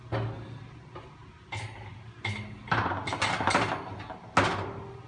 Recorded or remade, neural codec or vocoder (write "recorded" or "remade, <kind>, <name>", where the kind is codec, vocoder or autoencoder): recorded